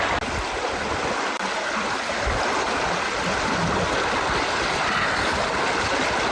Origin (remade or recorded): recorded